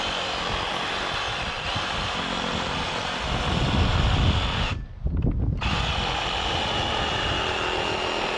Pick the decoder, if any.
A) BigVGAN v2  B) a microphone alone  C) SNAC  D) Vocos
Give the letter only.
B